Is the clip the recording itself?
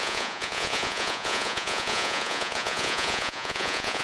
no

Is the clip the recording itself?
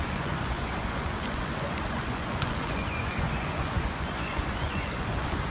no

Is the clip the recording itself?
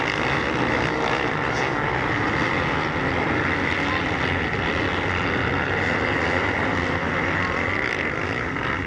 yes